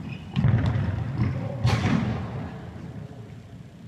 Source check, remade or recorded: recorded